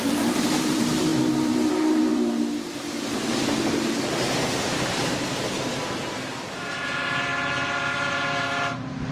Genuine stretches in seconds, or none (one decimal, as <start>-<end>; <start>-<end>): none